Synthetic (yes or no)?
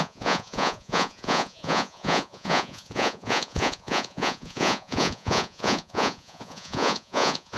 yes